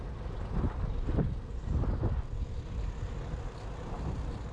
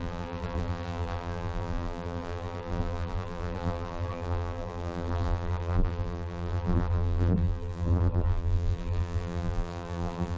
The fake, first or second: second